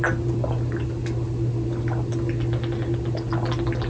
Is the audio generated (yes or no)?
no